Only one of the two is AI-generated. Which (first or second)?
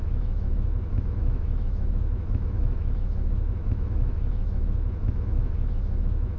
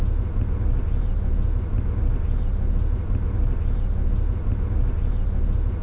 first